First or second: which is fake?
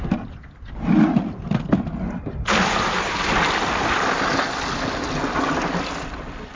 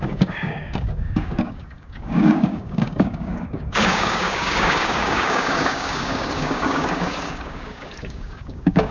second